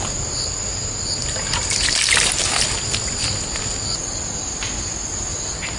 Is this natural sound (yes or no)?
yes